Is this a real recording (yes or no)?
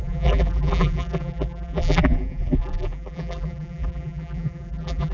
no